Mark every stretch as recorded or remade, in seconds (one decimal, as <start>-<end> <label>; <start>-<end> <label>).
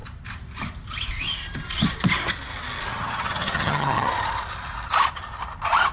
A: 0.0-2.9 recorded; 2.9-4.1 remade; 4.1-5.9 recorded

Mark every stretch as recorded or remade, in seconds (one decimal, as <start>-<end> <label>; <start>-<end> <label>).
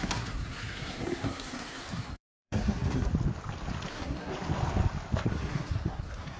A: 0.0-3.1 remade; 3.1-3.9 recorded; 3.9-4.3 remade; 4.3-5.3 recorded; 5.3-6.4 remade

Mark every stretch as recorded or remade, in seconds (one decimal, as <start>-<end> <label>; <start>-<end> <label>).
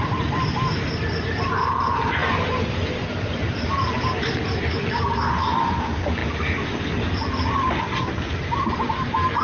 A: 0.0-9.4 recorded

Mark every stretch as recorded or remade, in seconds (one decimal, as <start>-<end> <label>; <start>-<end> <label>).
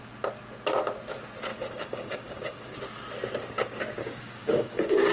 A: 0.0-1.5 recorded; 1.5-2.8 remade; 2.8-4.0 recorded; 4.0-5.1 remade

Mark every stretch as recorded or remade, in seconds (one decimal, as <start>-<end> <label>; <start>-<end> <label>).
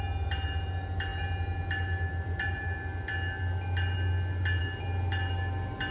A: 0.0-5.9 recorded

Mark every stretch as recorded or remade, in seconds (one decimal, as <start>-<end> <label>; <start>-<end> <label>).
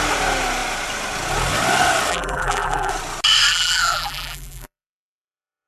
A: 0.0-2.1 recorded; 2.1-2.9 remade; 2.9-3.5 recorded; 3.5-5.7 remade